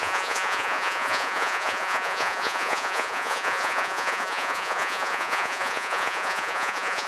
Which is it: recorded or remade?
remade